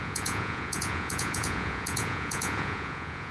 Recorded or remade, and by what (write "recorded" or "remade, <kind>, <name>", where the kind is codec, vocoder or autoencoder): remade, vocoder, Vocos